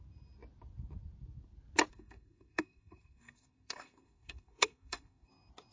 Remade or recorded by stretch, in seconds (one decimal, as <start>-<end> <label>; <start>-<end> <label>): 0.0-1.9 recorded; 1.9-5.3 remade; 5.3-5.7 recorded